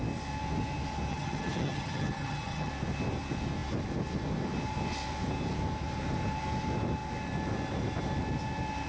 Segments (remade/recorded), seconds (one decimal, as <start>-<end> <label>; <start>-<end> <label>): 0.0-1.1 recorded; 1.1-2.7 remade; 2.7-8.9 recorded